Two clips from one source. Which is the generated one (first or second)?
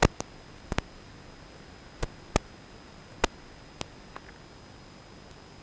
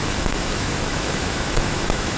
second